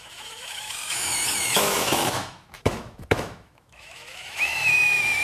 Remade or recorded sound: remade